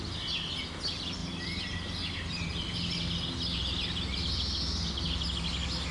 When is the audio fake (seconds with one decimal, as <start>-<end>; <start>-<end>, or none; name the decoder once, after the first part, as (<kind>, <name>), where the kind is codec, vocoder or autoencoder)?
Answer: none